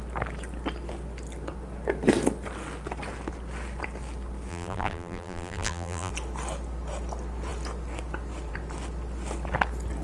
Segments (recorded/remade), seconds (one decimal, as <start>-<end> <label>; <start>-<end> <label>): 0.0-4.5 recorded; 4.5-6.1 remade; 6.1-10.0 recorded